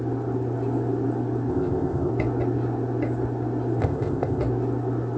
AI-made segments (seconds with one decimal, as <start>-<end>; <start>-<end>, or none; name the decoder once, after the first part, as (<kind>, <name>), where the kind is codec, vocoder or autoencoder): 1.5-2.1 (codec, ZipCodec); 3.8-4.4